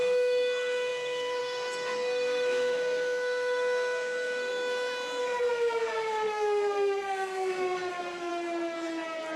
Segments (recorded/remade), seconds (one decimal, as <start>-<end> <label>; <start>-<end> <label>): 0.0-4.5 remade; 4.5-5.2 recorded; 5.2-8.3 remade; 8.3-9.4 recorded